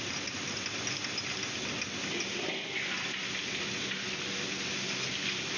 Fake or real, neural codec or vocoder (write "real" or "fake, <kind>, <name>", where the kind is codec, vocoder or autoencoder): real